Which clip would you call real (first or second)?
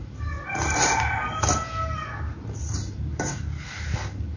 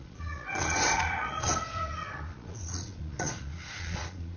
first